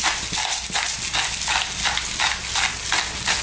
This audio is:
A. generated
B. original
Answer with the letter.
B